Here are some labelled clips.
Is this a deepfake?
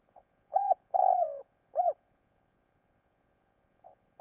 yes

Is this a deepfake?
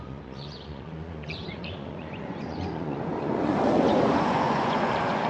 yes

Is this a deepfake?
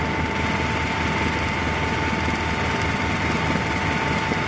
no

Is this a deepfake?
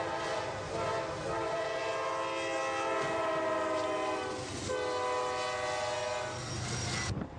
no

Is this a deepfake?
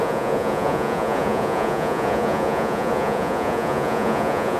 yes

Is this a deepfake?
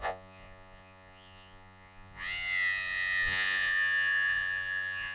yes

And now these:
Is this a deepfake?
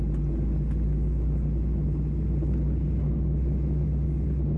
no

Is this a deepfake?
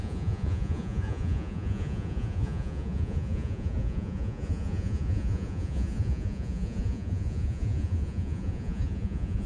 yes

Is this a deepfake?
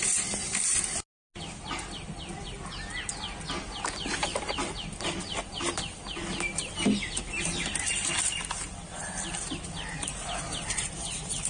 no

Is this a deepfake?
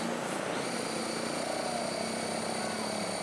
no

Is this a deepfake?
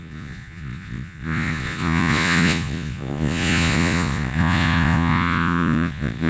yes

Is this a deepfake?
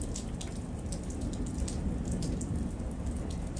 no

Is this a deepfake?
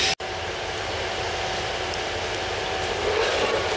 no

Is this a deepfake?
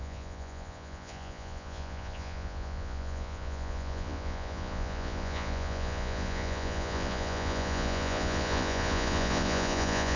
yes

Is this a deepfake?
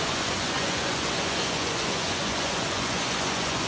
yes